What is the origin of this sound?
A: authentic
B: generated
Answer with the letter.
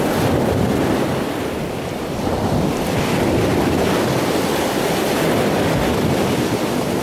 A